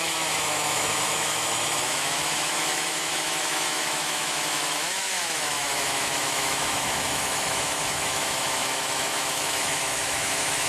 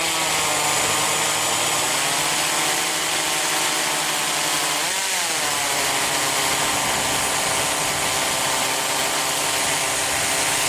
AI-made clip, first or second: first